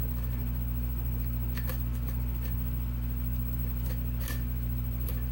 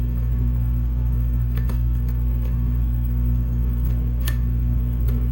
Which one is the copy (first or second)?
second